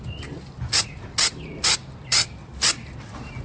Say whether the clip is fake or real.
real